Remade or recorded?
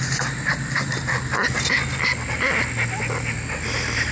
recorded